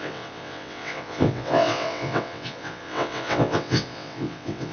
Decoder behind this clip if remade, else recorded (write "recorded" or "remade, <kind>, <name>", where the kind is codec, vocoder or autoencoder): remade, vocoder, WaveNeXt